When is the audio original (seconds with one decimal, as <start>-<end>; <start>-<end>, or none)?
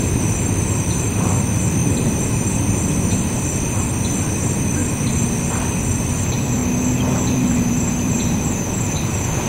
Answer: 6.6-7.3